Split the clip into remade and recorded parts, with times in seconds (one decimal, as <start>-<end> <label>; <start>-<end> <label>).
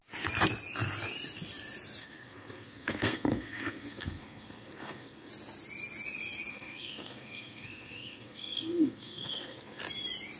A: 0.0-2.0 recorded; 2.0-5.3 remade; 5.3-6.5 recorded; 6.5-9.8 remade; 9.8-10.4 recorded